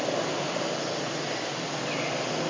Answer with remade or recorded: recorded